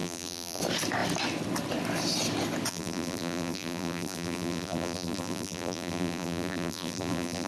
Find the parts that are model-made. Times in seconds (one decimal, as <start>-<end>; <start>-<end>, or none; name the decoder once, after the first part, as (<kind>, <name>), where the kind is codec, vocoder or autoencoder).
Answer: 0.0-0.6 (vocoder, BigVGAN v2); 2.7-7.5